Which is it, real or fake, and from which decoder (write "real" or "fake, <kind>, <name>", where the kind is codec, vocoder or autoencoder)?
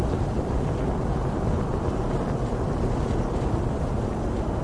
real